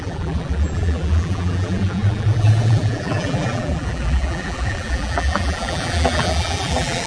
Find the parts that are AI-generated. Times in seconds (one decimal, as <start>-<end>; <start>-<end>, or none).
0.0-7.1